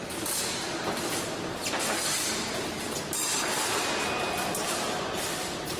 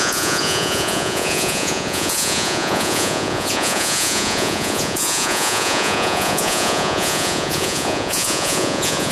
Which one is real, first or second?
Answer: first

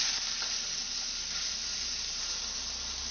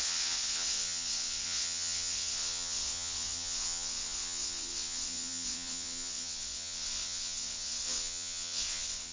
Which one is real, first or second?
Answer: first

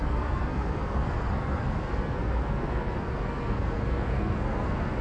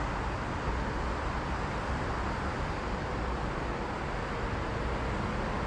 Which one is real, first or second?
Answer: second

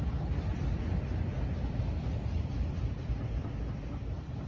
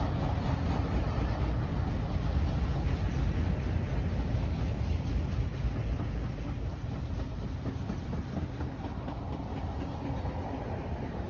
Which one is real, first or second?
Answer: second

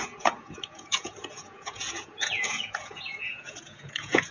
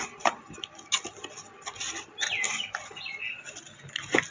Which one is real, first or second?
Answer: second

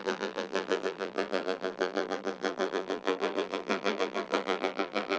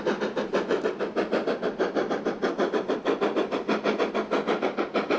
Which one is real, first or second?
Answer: second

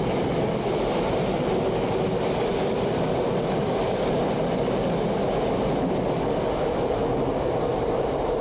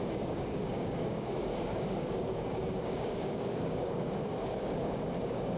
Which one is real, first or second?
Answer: first